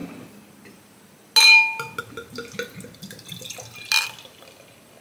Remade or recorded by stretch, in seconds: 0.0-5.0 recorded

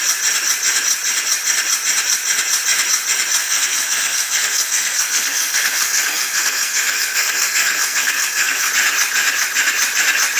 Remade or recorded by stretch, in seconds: 0.0-3.4 recorded; 3.4-8.7 remade; 8.7-10.4 recorded

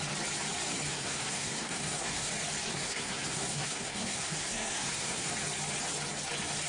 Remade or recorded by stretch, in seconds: 0.0-0.9 recorded; 0.9-2.3 remade; 2.3-2.7 recorded; 2.7-5.3 remade; 5.3-6.7 recorded

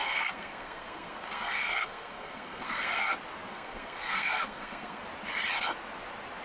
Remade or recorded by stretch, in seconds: 0.0-3.1 remade; 3.1-3.5 recorded; 3.5-5.0 remade; 5.0-6.4 recorded

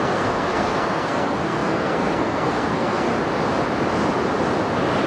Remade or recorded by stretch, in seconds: 0.0-3.1 remade; 3.1-5.1 recorded

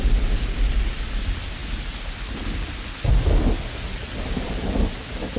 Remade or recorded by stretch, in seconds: 0.0-5.4 recorded

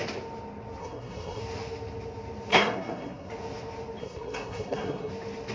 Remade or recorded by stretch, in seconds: 0.0-0.8 recorded; 0.8-1.4 remade; 1.4-2.5 recorded; 2.5-3.3 remade; 3.3-4.0 recorded; 4.0-5.1 remade; 5.1-5.5 recorded